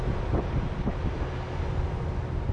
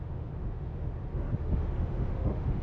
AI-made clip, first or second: second